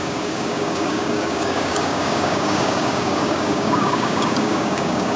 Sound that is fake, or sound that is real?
fake